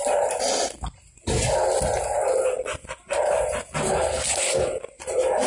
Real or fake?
real